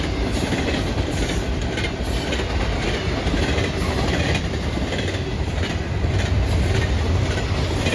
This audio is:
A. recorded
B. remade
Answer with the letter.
A